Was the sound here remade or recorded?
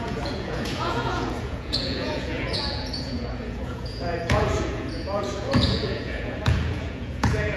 remade